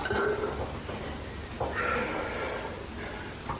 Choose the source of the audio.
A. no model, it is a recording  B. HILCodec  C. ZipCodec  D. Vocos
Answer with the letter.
A